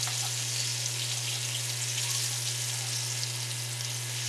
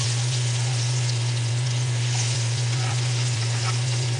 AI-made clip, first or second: second